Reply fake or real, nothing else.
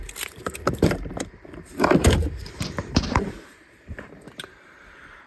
fake